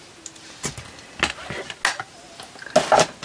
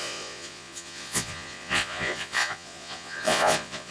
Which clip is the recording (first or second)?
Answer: first